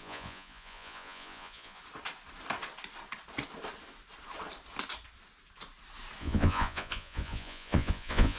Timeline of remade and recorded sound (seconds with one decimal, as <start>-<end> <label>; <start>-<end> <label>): 0.0-1.8 remade; 1.8-6.2 recorded; 6.2-8.4 remade